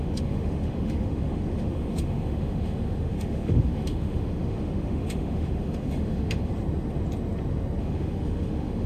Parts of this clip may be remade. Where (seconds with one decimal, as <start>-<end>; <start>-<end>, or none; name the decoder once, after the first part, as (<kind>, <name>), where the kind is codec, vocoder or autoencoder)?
0.0-6.5 (autoencoder, DAC-VAE); 7.8-8.9